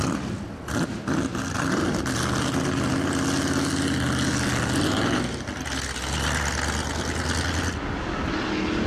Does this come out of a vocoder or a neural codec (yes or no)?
no